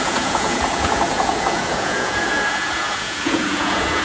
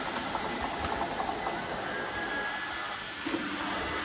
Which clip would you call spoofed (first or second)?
first